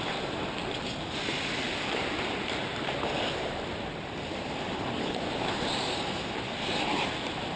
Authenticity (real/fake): fake